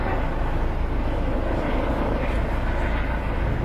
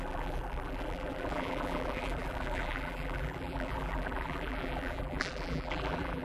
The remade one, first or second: second